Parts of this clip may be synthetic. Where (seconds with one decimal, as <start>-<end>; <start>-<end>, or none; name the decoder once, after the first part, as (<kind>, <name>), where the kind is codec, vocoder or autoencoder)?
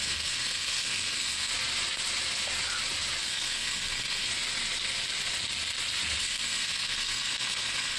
0.0-1.5 (codec, SNAC); 3.2-4.3; 6.2-8.0